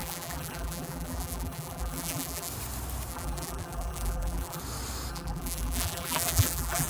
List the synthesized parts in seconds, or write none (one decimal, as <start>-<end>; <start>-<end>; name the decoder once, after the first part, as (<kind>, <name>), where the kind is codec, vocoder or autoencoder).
0.0-2.5 (vocoder, BigVGAN v2); 3.1-4.6; 5.1-6.9